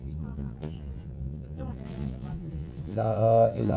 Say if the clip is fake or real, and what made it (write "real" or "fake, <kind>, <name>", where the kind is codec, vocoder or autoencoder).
fake, vocoder, Vocos